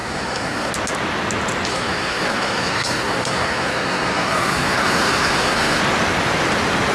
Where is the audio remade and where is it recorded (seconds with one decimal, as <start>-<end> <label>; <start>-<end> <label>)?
0.0-0.7 remade; 0.7-1.7 recorded; 1.7-5.8 remade; 5.8-6.9 recorded